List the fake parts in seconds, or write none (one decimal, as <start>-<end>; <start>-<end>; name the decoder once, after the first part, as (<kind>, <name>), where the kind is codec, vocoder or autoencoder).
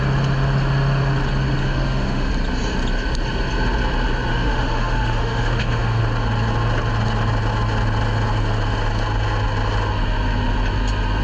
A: 1.6-2.3 (autoencoder, DAC-VAE); 4.3-6.0